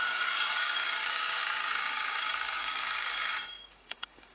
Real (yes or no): no